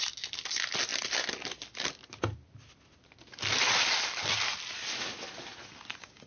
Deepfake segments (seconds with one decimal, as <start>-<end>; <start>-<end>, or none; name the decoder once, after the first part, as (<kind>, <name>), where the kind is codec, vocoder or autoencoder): none